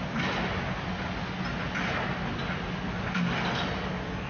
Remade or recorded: recorded